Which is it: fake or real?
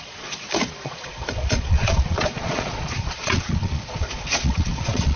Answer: fake